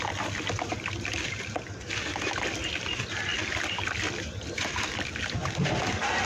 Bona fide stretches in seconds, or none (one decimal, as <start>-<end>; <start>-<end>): 0.0-6.3